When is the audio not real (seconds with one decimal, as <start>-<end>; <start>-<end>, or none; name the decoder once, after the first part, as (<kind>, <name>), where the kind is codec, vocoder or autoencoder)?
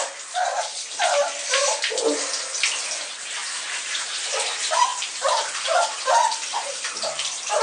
3.4-4.2 (vocoder, BigVGAN v2); 4.9-7.6